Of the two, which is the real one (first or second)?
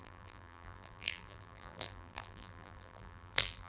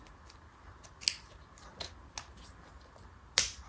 second